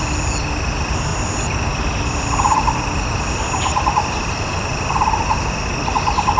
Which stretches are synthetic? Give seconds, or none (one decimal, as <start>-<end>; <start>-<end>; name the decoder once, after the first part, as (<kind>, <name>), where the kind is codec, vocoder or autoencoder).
1.1-4.9 (vocoder, BigVGAN v2)